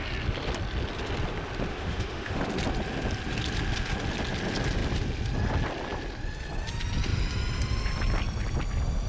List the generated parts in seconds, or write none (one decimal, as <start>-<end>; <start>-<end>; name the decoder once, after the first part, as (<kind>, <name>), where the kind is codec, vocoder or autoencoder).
1.7-2.4 (autoencoder, DAC-VAE)

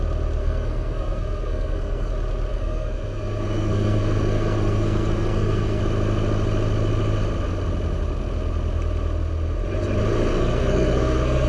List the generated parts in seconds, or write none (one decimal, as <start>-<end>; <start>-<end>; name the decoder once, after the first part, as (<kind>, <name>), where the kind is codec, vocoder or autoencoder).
0.4-2.1 (codec, SNAC); 2.5-5.8; 10.3-11.5

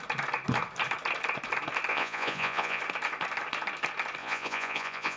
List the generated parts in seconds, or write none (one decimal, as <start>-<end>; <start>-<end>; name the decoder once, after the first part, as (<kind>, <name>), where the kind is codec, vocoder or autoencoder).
1.9-2.8 (vocoder, Vocos); 4.2-5.2

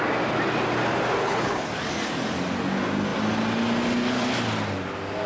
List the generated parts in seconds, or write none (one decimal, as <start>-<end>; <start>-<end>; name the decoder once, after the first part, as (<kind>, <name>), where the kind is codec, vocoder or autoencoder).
1.2-1.7 (codec, HILCodec)